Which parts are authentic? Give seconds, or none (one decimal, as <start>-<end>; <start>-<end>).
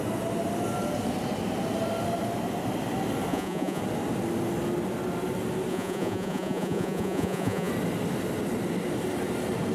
0.0-3.3; 3.8-5.7; 7.7-9.7